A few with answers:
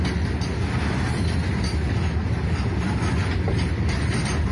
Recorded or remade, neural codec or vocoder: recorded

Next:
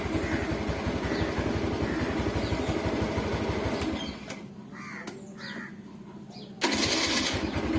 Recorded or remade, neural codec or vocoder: recorded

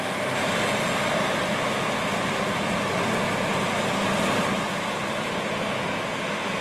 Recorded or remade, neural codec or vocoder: recorded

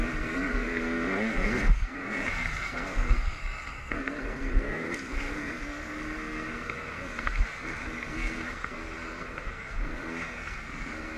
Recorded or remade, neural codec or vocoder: remade, codec, SNAC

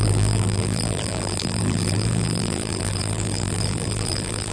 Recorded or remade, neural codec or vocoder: remade, vocoder, BigVGAN v2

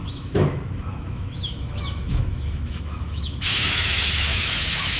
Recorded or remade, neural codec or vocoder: remade, autoencoder, DAC-VAE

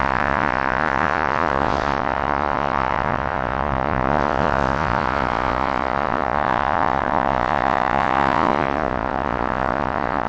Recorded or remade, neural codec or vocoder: remade, vocoder, Vocos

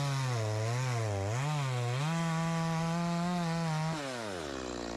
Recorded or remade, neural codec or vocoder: recorded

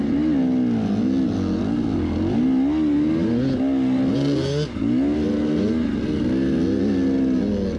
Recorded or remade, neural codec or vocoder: recorded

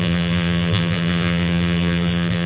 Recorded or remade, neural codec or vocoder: remade, vocoder, BigVGAN v2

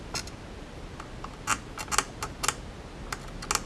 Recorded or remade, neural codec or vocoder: recorded